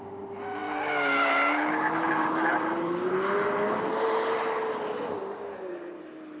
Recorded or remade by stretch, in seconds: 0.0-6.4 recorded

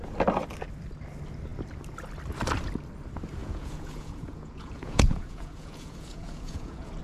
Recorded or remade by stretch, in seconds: 0.0-3.4 recorded; 3.4-7.0 remade

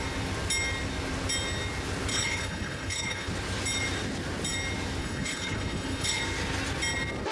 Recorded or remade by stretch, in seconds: 0.0-2.1 recorded; 2.1-3.3 remade; 3.3-5.0 recorded; 5.0-6.2 remade; 6.2-7.3 recorded

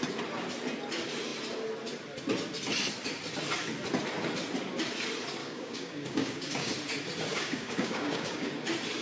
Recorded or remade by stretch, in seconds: 0.0-5.4 recorded; 5.4-6.7 remade; 6.7-7.3 recorded; 7.3-8.5 remade; 8.5-9.0 recorded

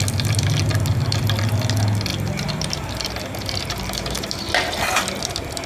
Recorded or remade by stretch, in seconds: 0.0-2.1 recorded; 2.1-4.5 remade; 4.5-5.7 recorded

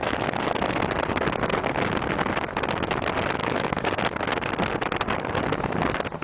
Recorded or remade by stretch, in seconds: 0.0-3.4 recorded; 3.4-4.0 remade; 4.0-6.2 recorded

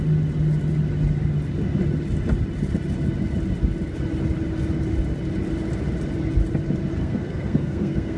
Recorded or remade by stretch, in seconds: 0.0-7.0 recorded; 7.0-8.2 remade